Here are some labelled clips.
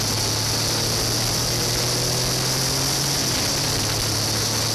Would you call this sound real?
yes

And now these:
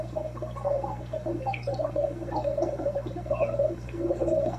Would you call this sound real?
no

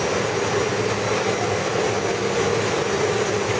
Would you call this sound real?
yes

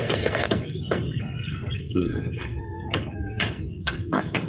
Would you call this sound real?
no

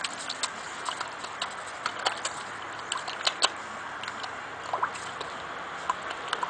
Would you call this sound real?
yes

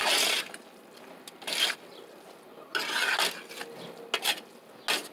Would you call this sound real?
yes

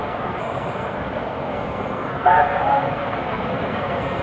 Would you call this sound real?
no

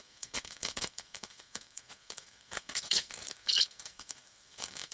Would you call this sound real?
no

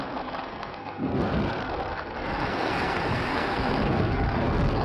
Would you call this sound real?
no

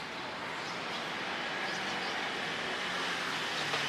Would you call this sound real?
yes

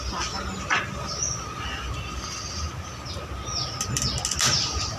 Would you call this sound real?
yes